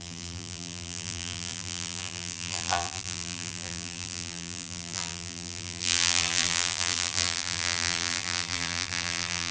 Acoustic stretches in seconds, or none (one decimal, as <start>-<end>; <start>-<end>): none